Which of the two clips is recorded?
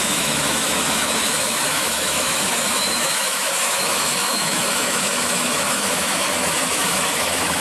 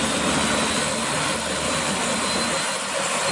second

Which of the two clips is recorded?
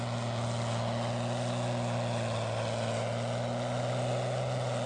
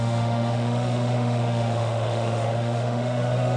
first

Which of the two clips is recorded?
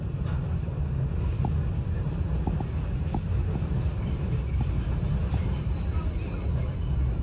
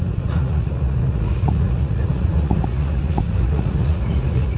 first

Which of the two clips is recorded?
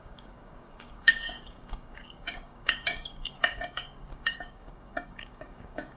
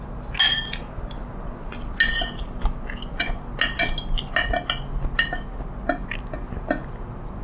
second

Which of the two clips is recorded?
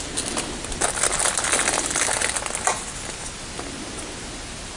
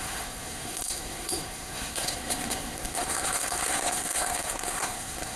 first